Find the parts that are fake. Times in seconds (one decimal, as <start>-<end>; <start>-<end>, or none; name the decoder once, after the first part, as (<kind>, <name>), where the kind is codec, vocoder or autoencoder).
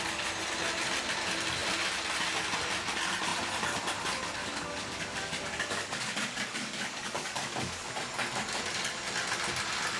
4.4-7.9 (codec, DAC)